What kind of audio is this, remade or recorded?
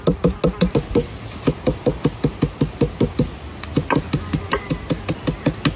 recorded